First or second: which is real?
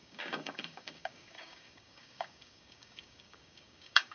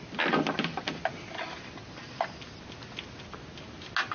second